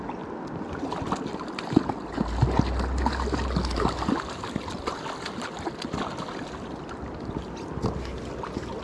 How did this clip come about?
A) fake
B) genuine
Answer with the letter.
B